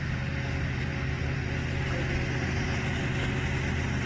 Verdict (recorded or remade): recorded